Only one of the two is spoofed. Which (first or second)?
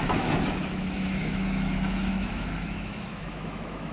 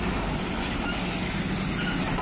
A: first